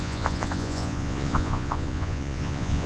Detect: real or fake fake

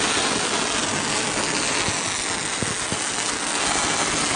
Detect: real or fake real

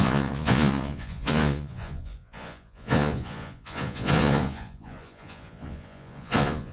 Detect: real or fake fake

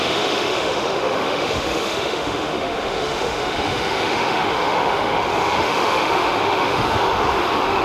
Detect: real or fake fake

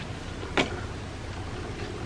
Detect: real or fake real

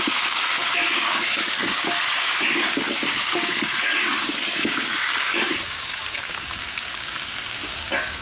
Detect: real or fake fake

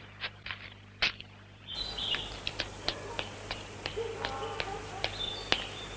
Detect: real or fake real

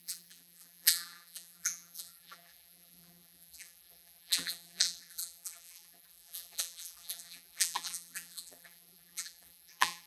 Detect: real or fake fake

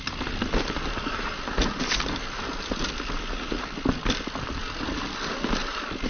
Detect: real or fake real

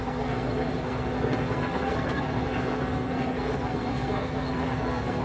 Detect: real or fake fake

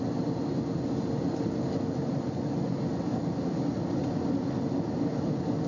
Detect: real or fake real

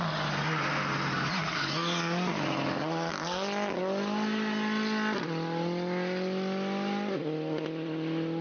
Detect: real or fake real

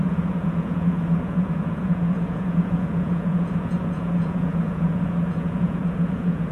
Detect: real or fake fake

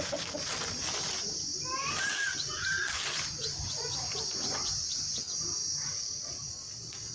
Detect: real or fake real